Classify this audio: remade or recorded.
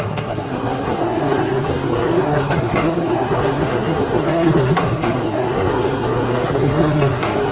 remade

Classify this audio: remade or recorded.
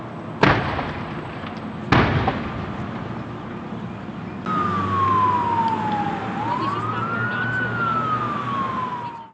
recorded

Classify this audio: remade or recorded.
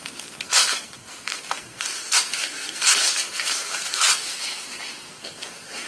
remade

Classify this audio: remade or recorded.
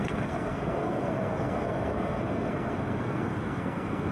remade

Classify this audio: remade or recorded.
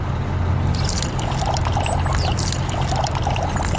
recorded